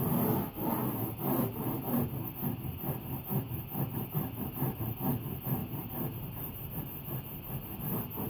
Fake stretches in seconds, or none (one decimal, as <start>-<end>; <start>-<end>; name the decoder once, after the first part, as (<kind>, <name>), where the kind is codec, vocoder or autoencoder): none